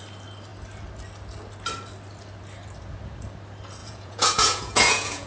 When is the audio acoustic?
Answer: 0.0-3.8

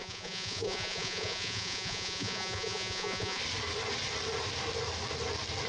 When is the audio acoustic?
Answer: 3.4-5.7

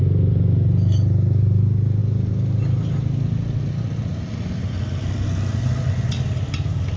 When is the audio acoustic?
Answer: 0.0-7.0

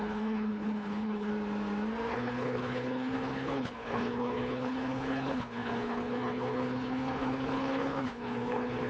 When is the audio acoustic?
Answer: 1.3-2.1

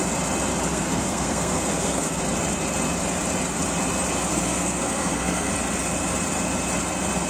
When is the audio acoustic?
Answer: 0.0-0.7; 2.2-4.3; 5.5-7.3